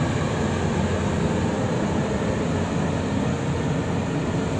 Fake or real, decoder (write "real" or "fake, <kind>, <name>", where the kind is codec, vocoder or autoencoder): real